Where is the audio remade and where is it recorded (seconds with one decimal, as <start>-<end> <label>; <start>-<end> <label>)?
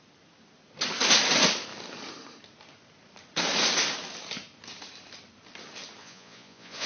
0.0-6.0 recorded; 6.0-6.9 remade